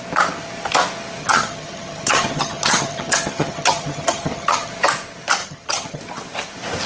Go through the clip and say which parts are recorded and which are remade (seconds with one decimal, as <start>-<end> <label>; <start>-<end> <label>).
0.0-1.2 recorded; 1.2-4.7 remade; 4.7-5.4 recorded; 5.4-6.0 remade; 6.0-6.9 recorded